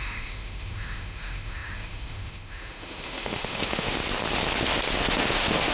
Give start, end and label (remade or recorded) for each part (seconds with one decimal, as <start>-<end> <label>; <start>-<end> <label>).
0.0-4.0 remade; 4.0-5.0 recorded; 5.0-5.7 remade